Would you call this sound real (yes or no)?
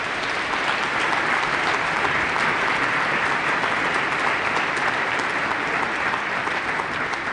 no